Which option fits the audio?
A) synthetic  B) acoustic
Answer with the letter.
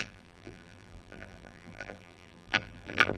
A